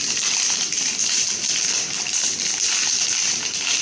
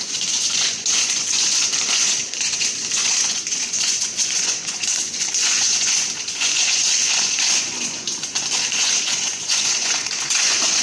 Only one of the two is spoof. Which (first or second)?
second